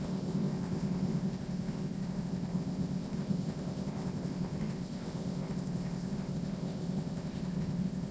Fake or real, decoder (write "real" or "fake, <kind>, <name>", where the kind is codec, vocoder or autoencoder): fake, codec, ZipCodec